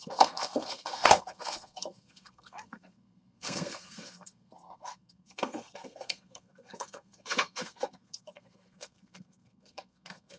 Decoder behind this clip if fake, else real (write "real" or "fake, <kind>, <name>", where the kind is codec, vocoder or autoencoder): fake, codec, SNAC